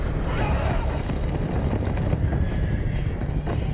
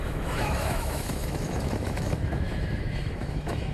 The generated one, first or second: second